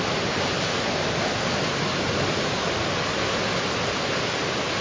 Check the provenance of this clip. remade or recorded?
recorded